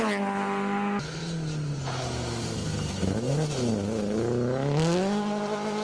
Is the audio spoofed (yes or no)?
no